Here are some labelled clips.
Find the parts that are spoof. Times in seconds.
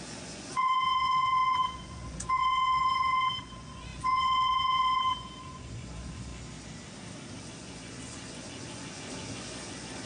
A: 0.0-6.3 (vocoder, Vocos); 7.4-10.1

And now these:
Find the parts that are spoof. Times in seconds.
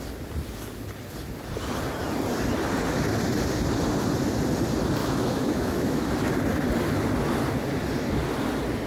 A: 5.0-6.1 (autoencoder, DAC-VAE)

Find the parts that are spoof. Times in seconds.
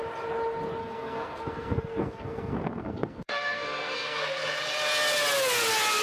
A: 0.8-4.4 (codec, SNAC)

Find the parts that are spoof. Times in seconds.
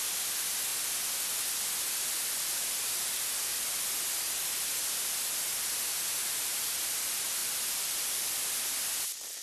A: none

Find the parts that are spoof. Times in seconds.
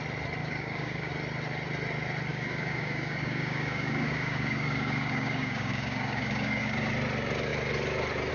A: 0.4-1.1 (codec, DAC); 2.3-6.9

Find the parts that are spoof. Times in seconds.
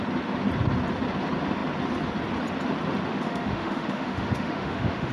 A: 3.1-5.1 (autoencoder, DAC-VAE)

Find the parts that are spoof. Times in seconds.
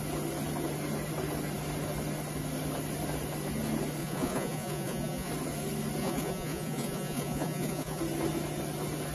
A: 4.0-5.3 (vocoder, Vocos); 6.0-8.0